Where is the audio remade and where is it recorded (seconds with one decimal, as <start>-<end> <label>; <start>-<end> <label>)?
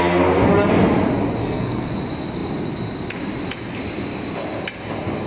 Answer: 0.0-1.4 recorded; 1.4-1.9 remade; 1.9-5.3 recorded